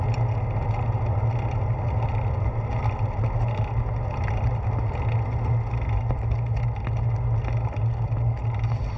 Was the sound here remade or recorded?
recorded